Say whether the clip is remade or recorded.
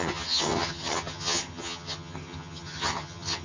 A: remade